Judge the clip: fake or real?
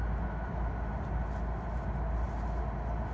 real